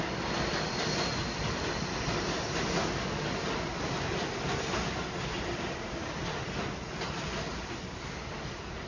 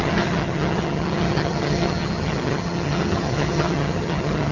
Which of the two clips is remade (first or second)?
second